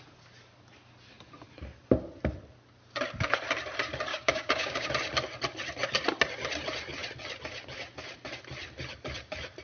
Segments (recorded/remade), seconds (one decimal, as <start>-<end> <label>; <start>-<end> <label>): 0.0-4.1 recorded; 4.1-4.9 remade; 4.9-9.6 recorded